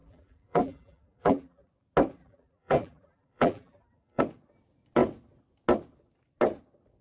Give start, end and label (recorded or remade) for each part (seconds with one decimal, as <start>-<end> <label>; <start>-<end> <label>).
0.0-1.7 remade; 1.7-2.2 recorded; 2.2-4.2 remade; 4.2-7.0 recorded